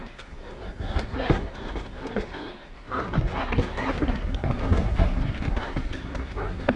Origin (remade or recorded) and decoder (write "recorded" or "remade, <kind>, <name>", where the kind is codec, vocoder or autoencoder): remade, codec, SNAC